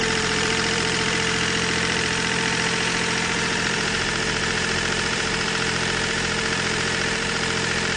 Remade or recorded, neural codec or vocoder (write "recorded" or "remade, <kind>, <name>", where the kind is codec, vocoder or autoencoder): remade, vocoder, BigVGAN v2